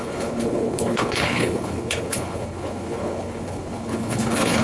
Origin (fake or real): fake